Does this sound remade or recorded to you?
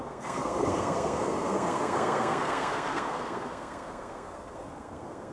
remade